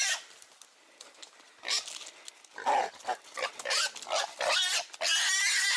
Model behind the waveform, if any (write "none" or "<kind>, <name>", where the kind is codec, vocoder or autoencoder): none